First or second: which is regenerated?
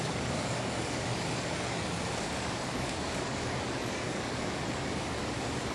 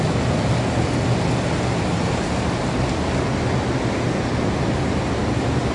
first